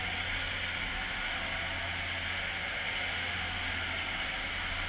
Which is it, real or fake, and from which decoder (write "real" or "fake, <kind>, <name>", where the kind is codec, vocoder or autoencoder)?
real